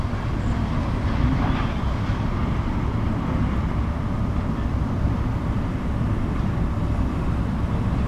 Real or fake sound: real